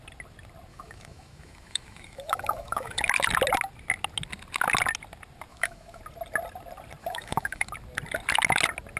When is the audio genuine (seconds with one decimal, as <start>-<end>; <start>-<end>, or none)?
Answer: 0.0-0.7; 3.0-5.5; 6.0-7.0; 7.7-9.0